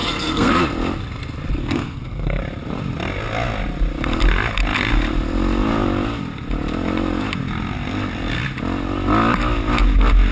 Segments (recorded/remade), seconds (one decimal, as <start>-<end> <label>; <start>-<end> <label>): 0.0-0.6 remade; 0.6-1.6 recorded; 1.6-2.4 remade; 2.4-10.3 recorded